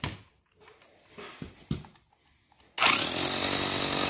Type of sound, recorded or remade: recorded